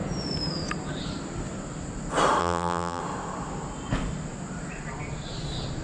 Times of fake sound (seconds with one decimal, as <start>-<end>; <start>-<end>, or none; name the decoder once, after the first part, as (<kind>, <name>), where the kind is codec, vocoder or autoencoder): 2.4-3.0 (vocoder, BigVGAN v2)